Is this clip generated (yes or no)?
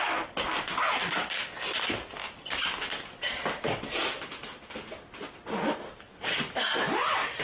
no